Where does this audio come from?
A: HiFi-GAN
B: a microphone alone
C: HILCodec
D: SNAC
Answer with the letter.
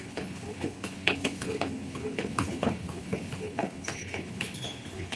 C